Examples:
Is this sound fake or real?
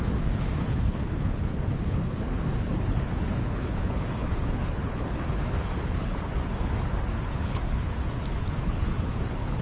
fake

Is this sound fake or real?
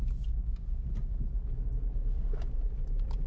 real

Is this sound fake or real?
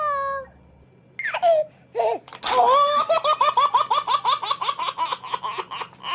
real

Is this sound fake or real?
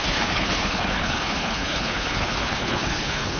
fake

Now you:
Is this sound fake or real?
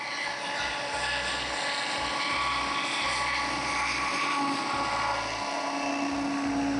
real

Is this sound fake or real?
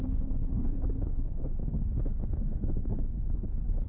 fake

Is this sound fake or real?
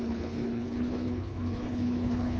fake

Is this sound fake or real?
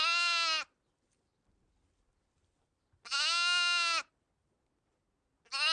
real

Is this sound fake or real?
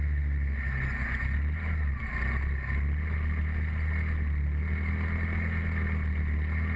real